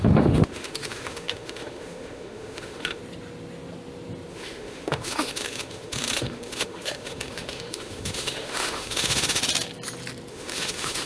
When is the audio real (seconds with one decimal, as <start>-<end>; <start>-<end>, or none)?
3.0-4.3; 9.4-10.3

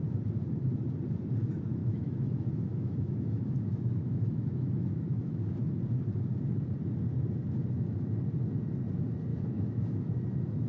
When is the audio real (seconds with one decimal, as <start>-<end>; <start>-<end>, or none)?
0.0-1.8; 5.7-9.3; 10.1-10.7

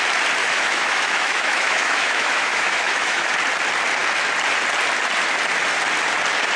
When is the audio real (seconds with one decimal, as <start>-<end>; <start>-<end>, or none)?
0.0-0.4; 3.3-6.6